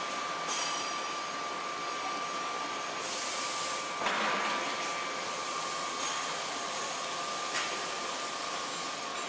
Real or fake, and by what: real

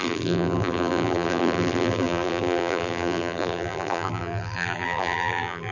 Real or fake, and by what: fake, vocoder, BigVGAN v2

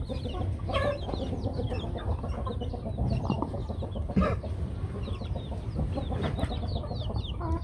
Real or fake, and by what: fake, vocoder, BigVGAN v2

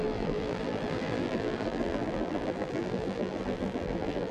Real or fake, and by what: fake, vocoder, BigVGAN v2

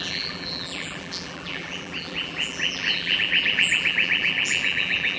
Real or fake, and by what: fake, vocoder, BigVGAN v2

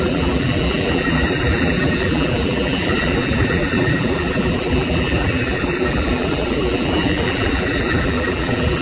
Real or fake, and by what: fake, vocoder, BigVGAN v2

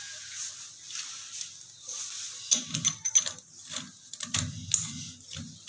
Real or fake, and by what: real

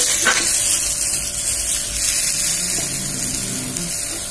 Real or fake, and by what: real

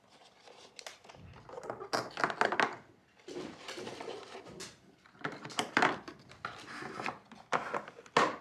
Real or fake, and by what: real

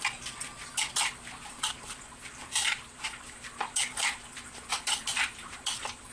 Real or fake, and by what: fake, vocoder, BigVGAN v2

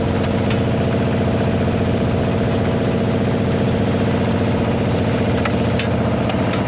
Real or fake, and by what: real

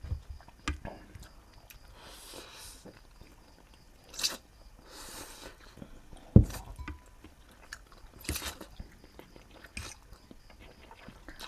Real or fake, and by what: real